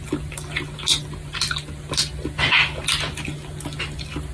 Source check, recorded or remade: recorded